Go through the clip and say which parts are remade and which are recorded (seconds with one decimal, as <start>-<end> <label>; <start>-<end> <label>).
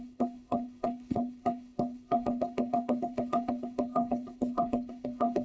0.0-5.4 remade